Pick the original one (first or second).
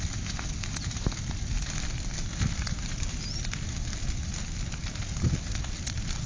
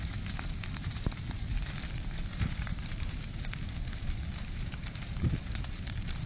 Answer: first